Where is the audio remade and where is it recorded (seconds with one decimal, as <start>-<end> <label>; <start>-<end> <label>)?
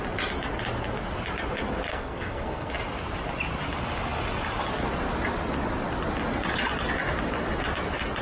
0.0-1.9 recorded; 1.9-2.7 remade; 2.7-8.2 recorded